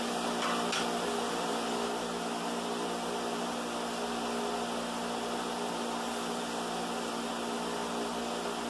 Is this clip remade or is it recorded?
recorded